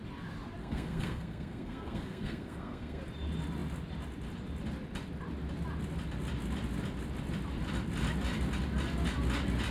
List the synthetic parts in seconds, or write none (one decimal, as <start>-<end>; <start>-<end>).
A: 0.6-3.0